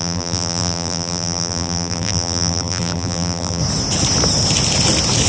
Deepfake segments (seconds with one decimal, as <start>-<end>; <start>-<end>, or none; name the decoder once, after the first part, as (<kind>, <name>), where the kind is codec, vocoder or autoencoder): 0.0-3.6 (vocoder, BigVGAN v2)

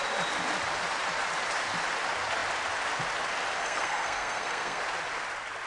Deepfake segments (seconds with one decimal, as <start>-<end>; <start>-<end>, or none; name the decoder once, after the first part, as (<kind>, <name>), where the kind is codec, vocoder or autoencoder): 3.6-4.8 (codec, SNAC)

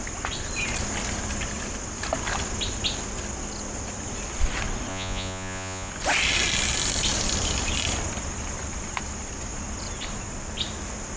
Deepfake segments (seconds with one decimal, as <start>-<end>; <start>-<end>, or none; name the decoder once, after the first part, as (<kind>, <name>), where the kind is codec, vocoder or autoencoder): 4.9-5.9 (vocoder, Vocos)

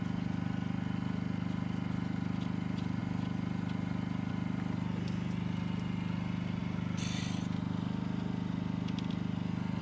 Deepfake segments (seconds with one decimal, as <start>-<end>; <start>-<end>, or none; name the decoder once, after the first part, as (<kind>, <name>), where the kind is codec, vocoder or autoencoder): none

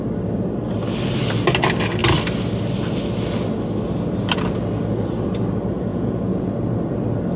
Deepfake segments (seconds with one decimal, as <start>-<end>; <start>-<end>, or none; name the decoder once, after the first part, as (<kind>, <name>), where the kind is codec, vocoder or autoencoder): 5.9-6.5 (vocoder, Vocos)

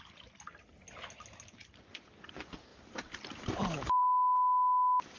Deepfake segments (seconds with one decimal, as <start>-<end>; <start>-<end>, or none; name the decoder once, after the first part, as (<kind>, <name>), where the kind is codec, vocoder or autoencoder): none

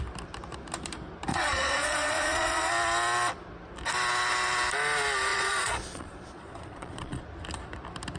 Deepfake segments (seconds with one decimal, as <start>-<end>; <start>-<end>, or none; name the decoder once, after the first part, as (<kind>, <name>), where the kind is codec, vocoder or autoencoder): 1.3-2.7 (vocoder, Vocos); 5.3-7.2

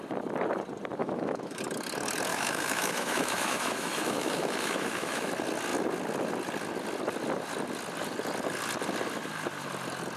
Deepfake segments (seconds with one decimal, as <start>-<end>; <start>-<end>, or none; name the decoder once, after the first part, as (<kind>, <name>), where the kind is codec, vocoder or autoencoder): 1.0-1.6 (autoencoder, DAC-VAE); 2.3-5.3